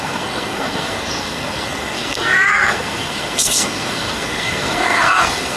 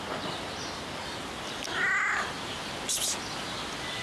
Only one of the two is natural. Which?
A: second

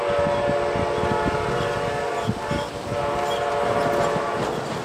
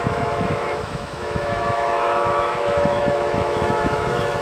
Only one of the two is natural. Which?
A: first